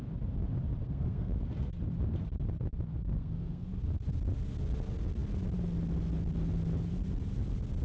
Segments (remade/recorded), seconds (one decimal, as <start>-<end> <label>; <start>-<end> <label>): 0.0-0.8 recorded; 0.8-1.7 remade; 1.7-3.1 recorded; 3.1-3.7 remade; 3.7-7.8 recorded